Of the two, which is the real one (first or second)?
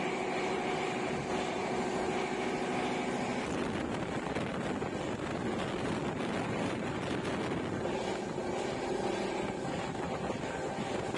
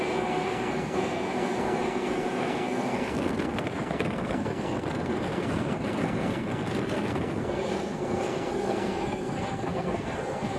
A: first